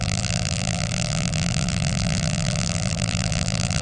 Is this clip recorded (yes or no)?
no